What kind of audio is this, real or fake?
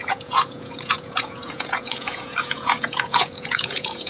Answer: fake